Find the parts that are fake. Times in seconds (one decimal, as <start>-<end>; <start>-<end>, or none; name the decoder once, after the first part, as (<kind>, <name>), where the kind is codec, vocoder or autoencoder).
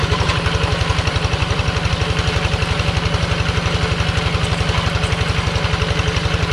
0.0-1.9 (vocoder, BigVGAN v2)